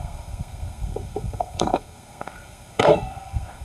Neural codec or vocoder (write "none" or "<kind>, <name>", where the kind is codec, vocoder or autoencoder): codec, SNAC